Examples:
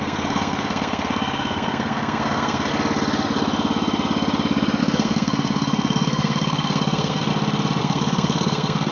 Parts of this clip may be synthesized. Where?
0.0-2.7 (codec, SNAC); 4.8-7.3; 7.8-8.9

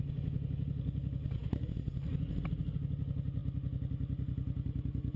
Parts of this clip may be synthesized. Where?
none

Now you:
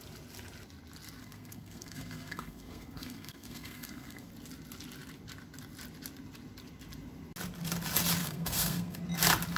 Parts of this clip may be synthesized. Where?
1.2-4.3 (codec, SNAC); 8.2-9.0

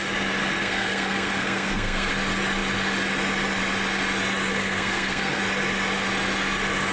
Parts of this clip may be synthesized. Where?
0.4-2.1 (codec, SNAC); 4.5-5.4

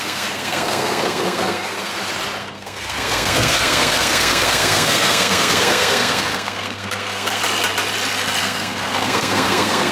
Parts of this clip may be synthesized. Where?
0.0-1.9 (codec, SNAC); 2.4-7.4; 8.4-9.9

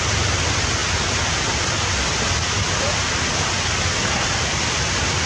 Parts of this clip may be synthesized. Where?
none